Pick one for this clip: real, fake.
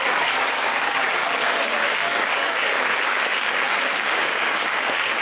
fake